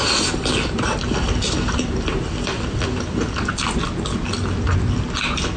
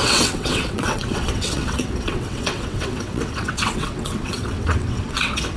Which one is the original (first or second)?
first